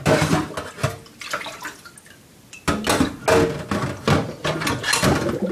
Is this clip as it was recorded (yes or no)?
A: yes